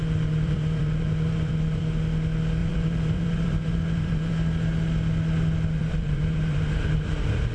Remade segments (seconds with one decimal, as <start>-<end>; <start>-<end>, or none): 0.0-1.8; 2.6-4.3; 5.8-7.5